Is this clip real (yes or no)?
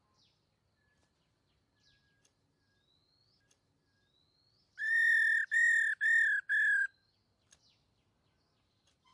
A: yes